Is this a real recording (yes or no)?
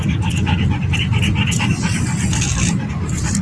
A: yes